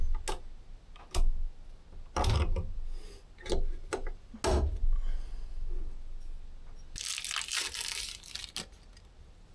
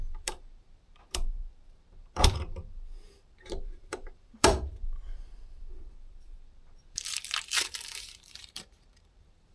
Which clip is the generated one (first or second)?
second